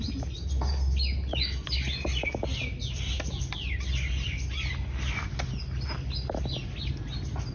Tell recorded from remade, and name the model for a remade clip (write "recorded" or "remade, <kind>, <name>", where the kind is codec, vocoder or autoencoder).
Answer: recorded